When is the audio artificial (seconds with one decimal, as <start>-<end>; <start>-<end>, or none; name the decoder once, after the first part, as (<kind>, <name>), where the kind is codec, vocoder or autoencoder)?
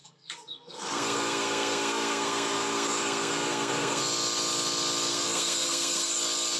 0.0-4.0 (codec, SNAC); 5.1-6.1